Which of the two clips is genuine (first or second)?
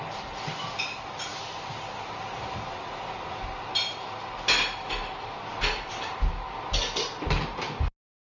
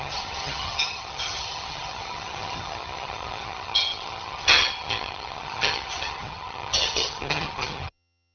first